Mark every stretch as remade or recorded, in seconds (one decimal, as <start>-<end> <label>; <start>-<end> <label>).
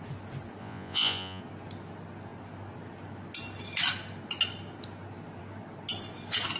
0.0-0.6 recorded; 0.6-1.4 remade; 1.4-6.6 recorded